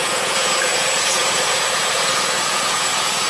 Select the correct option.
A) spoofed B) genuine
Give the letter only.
A